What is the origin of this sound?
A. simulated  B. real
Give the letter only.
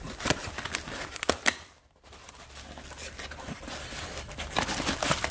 B